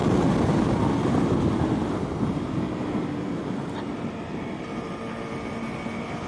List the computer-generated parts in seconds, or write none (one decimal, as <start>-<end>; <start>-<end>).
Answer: none